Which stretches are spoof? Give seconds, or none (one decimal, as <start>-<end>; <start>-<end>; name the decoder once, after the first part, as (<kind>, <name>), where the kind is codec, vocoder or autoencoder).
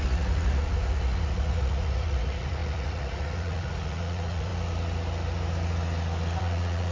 0.0-4.5 (vocoder, Vocos); 6.4-6.9